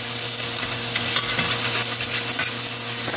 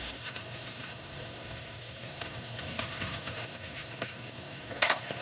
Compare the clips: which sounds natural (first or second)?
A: first